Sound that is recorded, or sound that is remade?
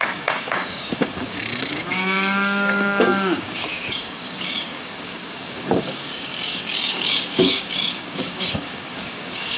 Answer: remade